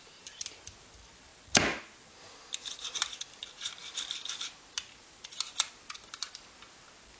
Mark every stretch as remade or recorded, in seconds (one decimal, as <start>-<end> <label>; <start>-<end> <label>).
0.0-7.2 recorded